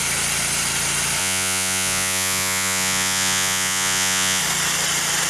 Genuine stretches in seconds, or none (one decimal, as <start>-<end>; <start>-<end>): 0.0-1.2; 4.4-5.3